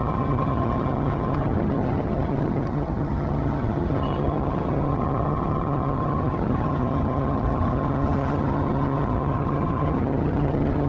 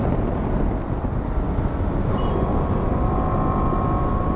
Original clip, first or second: second